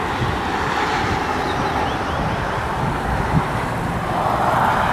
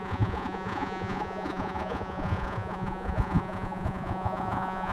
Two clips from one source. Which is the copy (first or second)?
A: second